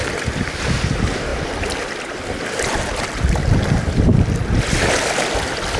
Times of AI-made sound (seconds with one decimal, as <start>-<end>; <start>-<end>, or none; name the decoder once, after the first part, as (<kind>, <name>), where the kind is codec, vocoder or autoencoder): none